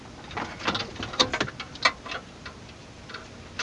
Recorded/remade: recorded